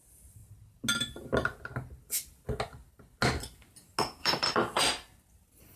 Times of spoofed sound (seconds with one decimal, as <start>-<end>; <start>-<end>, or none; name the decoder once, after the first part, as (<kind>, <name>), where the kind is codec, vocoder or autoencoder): 4.2-4.8 (vocoder, BigVGAN v2)